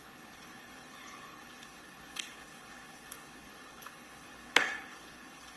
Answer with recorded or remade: remade